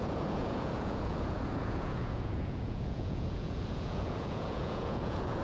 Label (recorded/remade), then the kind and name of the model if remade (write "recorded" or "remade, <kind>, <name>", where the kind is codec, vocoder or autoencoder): remade, vocoder, Vocos